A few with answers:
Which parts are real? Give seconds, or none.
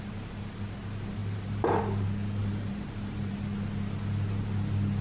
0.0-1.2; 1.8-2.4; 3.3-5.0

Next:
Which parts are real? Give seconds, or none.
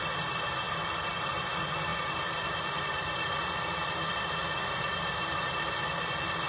1.1-1.9; 5.8-6.5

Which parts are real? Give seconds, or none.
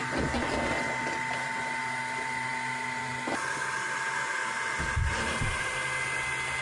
0.0-5.1; 5.7-6.6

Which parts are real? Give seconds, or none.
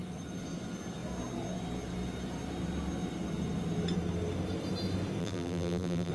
0.0-5.2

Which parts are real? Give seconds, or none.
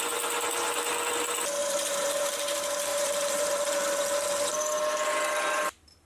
0.0-1.6; 2.3-2.9; 3.5-6.1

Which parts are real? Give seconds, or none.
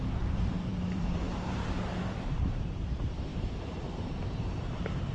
none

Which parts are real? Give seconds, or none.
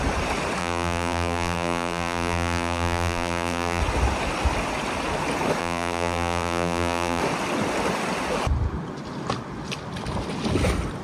0.0-0.6; 3.8-5.6; 7.2-11.0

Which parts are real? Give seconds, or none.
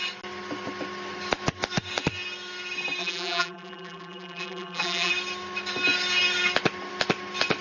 0.0-3.0; 5.1-7.6